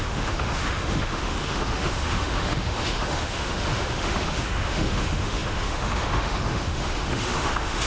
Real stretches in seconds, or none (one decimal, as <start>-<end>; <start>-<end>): none